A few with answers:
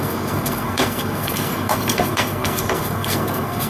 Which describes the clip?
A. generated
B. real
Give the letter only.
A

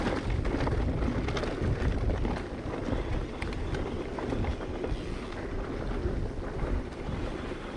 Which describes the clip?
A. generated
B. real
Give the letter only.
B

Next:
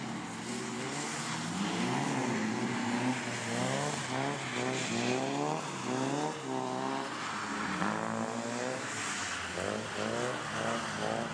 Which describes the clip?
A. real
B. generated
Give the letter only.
A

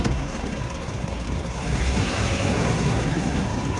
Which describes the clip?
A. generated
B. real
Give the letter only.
A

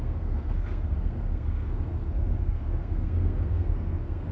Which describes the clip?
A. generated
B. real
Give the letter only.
A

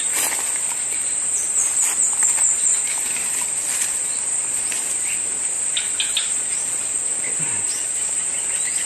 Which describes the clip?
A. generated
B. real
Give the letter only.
B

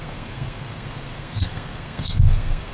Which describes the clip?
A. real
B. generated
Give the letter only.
B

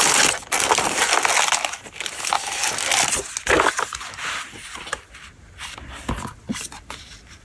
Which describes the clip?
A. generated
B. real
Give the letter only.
B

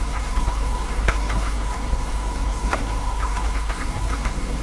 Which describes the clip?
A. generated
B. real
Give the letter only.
A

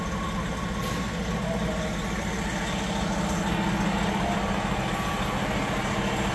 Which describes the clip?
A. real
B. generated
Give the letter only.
A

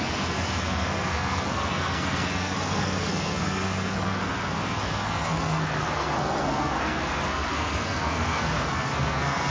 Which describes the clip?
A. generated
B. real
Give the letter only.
A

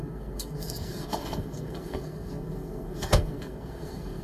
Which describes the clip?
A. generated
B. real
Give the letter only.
A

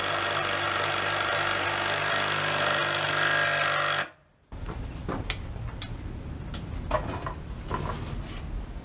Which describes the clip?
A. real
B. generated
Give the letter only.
A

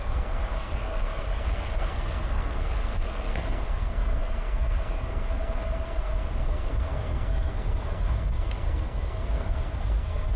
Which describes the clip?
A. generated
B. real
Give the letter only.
A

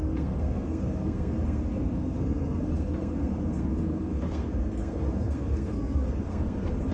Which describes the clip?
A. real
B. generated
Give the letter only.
B